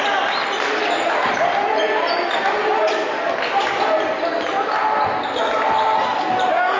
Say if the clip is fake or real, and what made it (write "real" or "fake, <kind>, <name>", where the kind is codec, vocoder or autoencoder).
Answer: real